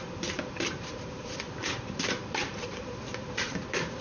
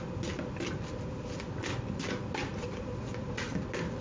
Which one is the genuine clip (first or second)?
second